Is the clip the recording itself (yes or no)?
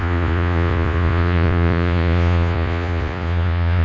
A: no